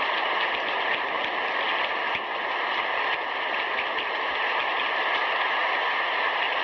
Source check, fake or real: real